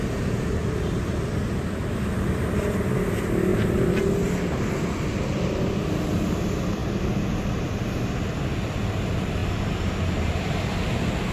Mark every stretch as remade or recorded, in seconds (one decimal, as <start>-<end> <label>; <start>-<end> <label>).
0.0-11.3 recorded

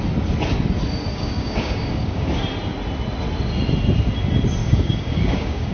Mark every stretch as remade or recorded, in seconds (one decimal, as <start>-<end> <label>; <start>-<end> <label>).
0.0-1.1 recorded; 1.1-2.3 remade; 2.3-4.6 recorded; 4.6-5.7 remade

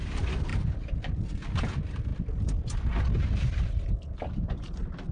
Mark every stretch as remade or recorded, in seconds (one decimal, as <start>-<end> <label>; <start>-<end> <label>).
0.0-5.1 recorded

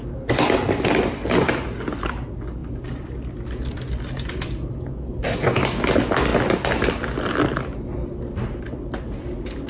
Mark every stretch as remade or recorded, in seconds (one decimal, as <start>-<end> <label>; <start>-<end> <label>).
0.0-9.7 recorded

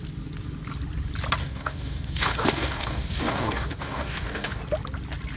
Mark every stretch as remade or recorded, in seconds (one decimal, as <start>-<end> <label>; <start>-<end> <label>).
0.0-1.4 recorded; 1.4-4.6 remade; 4.6-5.4 recorded